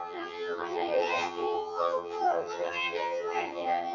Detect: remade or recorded remade